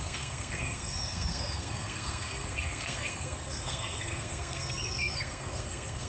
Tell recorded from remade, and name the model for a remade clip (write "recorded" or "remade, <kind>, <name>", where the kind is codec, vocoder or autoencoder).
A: remade, codec, SNAC